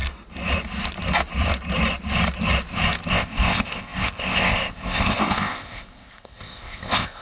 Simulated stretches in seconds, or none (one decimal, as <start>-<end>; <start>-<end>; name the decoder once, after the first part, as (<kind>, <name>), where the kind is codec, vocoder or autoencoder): 3.1-7.2 (codec, ZipCodec)